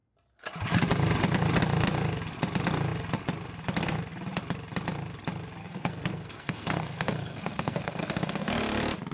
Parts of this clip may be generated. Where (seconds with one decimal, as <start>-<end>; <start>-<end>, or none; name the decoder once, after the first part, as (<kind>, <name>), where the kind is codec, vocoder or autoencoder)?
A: 5.6-8.5 (codec, SNAC)